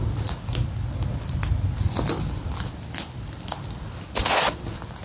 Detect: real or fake real